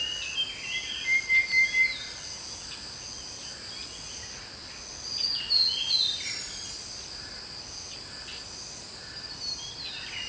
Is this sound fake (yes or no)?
no